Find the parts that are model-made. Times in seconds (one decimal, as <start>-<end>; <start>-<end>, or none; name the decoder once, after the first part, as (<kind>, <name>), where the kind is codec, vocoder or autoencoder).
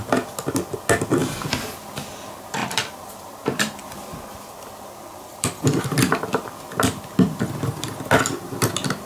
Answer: 2.6-5.8 (vocoder, BigVGAN v2)